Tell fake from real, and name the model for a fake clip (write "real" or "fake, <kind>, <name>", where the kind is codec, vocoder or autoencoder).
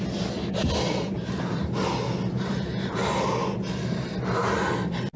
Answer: real